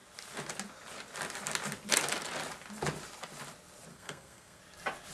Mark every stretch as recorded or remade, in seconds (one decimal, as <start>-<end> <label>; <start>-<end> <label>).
0.0-3.9 recorded; 3.9-4.6 remade; 4.6-5.1 recorded